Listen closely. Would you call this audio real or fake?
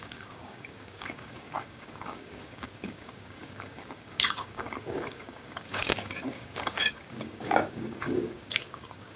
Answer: fake